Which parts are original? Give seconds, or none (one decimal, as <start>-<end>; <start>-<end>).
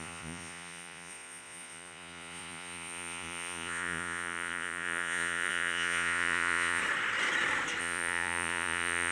6.8-7.8